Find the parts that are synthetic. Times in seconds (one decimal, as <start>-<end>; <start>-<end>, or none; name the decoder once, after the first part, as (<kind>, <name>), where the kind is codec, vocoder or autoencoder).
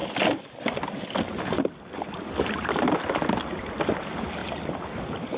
none